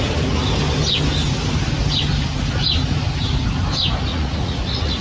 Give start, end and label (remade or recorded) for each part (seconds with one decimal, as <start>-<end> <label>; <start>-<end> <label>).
0.0-4.1 recorded; 4.1-5.0 remade